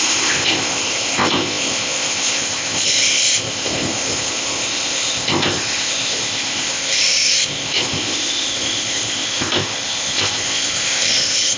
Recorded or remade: remade